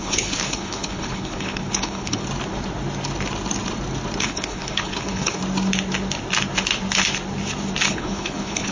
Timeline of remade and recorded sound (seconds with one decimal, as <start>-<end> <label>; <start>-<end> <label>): 0.0-2.2 remade; 2.2-4.2 recorded; 4.2-5.4 remade; 5.4-7.9 recorded; 7.9-8.7 remade